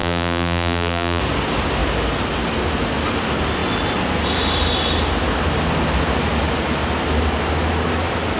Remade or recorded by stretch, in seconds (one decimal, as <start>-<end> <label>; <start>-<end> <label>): 0.0-1.2 remade; 1.2-8.4 recorded